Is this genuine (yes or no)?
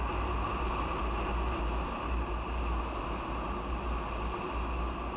yes